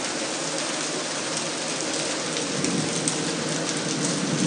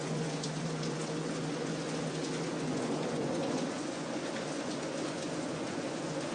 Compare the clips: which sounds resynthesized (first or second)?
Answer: second